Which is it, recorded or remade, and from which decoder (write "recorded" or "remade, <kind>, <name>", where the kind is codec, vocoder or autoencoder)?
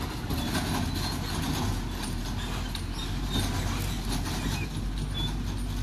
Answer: recorded